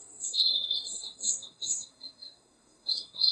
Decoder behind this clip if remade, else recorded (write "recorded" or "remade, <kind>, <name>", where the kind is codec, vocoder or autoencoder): remade, codec, SNAC